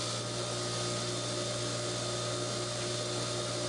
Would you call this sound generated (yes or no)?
no